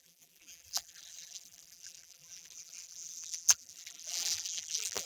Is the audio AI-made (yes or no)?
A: yes